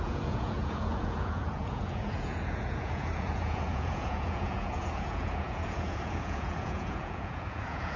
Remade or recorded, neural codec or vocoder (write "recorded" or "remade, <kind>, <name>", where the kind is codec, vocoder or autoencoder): remade, vocoder, Vocos